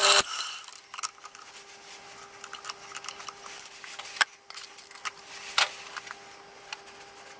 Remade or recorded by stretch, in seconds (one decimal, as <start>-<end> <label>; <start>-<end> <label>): 0.0-7.4 recorded